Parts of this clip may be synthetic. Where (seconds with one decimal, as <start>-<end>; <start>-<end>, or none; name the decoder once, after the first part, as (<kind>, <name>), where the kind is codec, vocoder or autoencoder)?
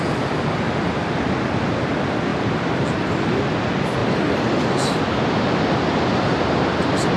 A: none